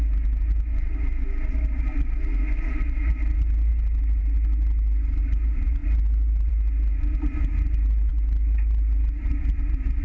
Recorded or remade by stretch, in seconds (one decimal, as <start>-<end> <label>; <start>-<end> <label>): 0.0-10.0 recorded